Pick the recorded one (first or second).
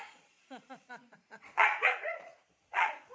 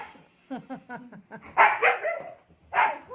second